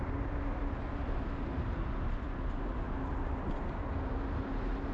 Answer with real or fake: real